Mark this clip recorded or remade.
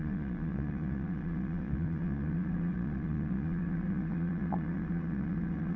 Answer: remade